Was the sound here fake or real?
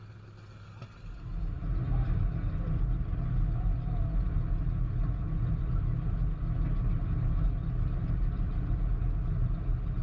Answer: real